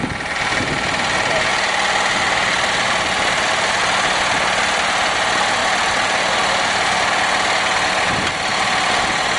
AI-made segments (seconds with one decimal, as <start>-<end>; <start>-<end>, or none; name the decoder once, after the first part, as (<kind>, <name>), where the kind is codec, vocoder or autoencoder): 1.5-3.8 (vocoder, BigVGAN v2); 5.6-6.3; 8.5-9.4